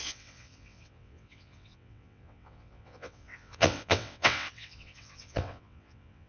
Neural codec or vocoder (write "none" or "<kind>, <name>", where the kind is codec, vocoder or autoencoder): vocoder, WaveNeXt